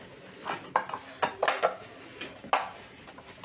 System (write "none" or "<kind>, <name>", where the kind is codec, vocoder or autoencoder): none